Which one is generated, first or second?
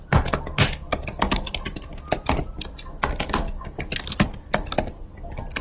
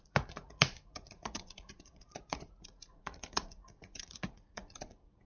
second